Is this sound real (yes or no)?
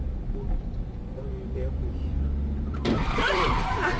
no